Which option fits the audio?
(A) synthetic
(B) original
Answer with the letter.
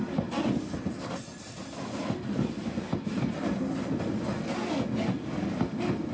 B